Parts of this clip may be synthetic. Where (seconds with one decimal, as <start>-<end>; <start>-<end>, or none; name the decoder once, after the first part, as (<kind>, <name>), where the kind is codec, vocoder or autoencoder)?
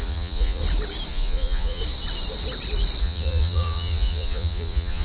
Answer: 0.0-0.6 (vocoder, Vocos); 1.1-1.8; 3.0-5.0